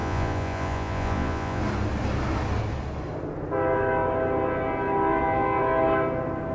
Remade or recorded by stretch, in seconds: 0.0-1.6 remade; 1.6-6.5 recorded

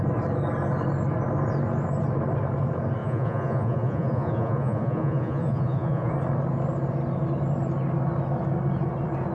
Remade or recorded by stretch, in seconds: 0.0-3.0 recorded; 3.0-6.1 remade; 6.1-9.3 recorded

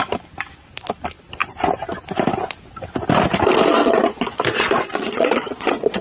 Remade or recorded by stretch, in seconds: 0.0-3.8 recorded; 3.8-6.0 remade

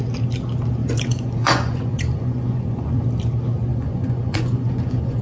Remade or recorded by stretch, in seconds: 0.0-0.8 recorded; 0.8-3.1 remade; 3.1-3.7 recorded; 3.7-5.2 remade